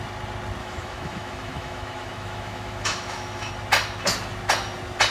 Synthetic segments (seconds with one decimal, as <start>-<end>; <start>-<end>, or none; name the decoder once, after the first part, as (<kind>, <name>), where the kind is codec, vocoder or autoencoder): 0.6-3.5 (autoencoder, DAC-VAE)